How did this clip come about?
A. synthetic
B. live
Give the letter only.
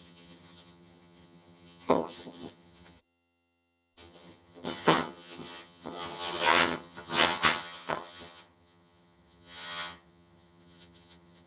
A